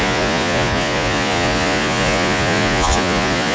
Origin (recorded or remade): remade